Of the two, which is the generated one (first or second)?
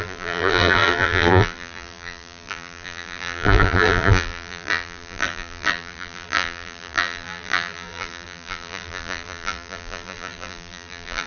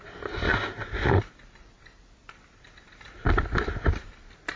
first